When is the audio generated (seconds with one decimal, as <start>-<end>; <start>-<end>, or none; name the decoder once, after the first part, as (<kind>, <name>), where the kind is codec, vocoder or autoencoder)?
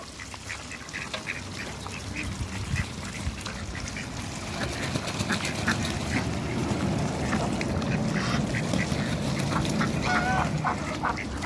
none